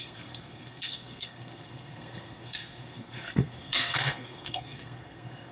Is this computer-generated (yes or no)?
yes